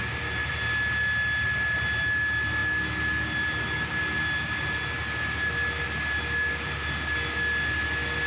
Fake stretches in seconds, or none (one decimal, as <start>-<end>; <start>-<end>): none